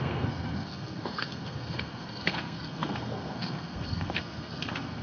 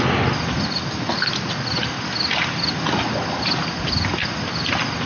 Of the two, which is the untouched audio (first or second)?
second